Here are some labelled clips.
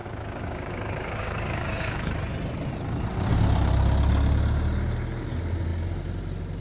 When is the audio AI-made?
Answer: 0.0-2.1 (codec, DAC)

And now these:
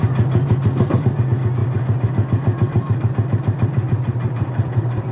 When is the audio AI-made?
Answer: 1.6-5.1 (vocoder, BigVGAN v2)

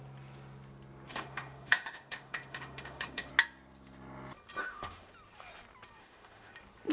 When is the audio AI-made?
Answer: 1.1-3.3 (autoencoder, DAC-VAE); 4.6-5.1; 6.0-6.5

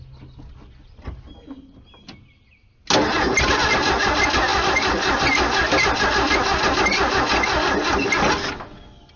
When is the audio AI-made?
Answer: none

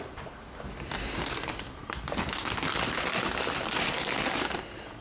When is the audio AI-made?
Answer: none